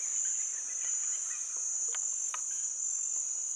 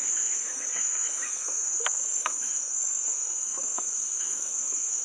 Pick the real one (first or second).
first